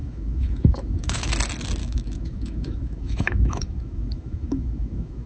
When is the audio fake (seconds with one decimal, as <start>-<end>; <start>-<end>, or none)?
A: 0.0-1.3; 1.8-5.3